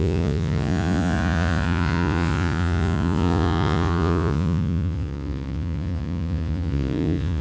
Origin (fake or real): fake